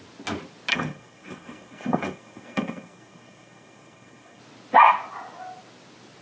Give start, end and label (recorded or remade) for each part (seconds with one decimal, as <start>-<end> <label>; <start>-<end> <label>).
0.0-0.7 recorded; 0.7-4.4 remade; 4.4-6.2 recorded